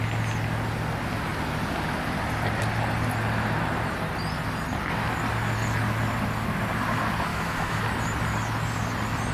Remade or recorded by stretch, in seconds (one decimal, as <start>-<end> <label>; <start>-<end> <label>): 0.0-7.3 recorded; 7.3-7.8 remade; 7.8-9.3 recorded